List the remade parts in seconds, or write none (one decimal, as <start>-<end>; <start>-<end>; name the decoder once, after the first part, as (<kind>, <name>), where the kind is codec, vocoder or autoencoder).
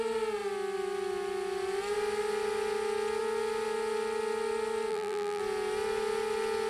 4.9-5.4 (vocoder, BigVGAN v2)